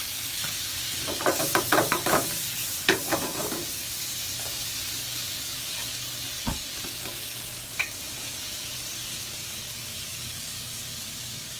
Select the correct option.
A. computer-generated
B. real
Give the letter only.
A